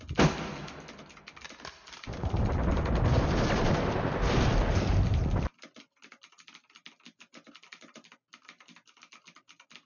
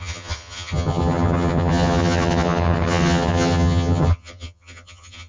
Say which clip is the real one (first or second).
first